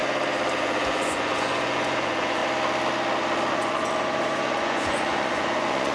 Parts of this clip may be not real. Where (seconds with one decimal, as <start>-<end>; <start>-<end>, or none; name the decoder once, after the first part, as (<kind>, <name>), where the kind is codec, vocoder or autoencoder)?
0.6-2.4 (vocoder, Vocos); 3.5-5.9

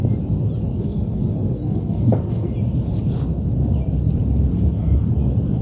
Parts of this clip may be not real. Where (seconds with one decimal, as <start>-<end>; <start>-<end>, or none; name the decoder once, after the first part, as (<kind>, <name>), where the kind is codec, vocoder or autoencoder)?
0.7-2.5 (codec, SNAC); 4.5-5.1